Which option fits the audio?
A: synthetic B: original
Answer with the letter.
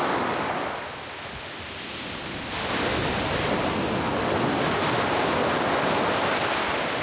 B